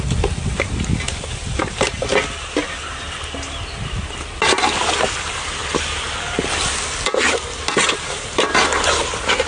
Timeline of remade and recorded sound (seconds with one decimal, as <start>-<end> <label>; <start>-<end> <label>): 0.0-9.5 recorded